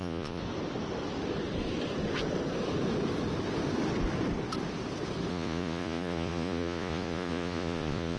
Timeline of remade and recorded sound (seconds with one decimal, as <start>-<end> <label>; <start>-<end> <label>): 0.0-0.4 remade; 0.4-5.3 recorded; 5.3-8.2 remade